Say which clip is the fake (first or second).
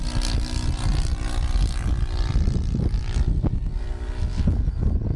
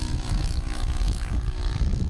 second